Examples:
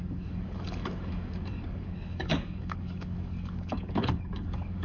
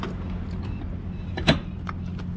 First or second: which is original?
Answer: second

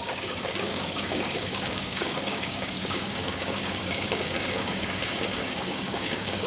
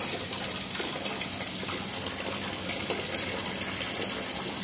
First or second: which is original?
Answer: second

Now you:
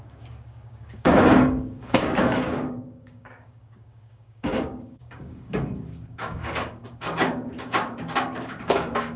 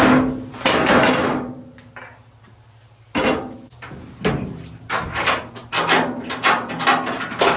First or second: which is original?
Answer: second